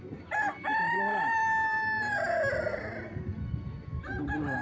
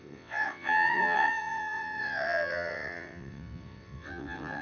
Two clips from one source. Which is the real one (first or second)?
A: first